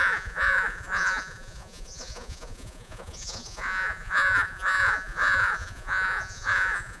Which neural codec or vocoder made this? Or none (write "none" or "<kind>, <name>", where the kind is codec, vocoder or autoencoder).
vocoder, Vocos